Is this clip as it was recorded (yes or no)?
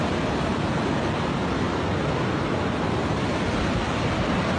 yes